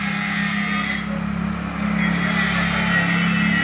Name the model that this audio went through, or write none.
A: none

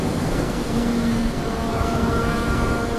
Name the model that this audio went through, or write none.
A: codec, SNAC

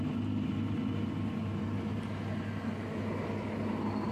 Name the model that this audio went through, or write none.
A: none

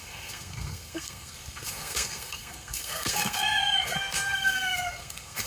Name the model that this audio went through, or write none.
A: codec, SNAC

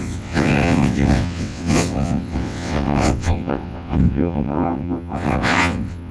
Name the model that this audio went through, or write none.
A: vocoder, WaveNeXt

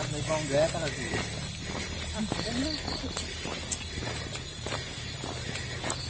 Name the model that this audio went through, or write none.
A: none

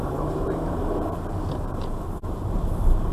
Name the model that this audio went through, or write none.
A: vocoder, BigVGAN v2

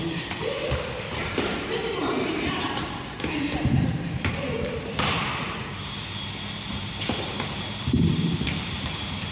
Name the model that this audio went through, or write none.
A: vocoder, BigVGAN v2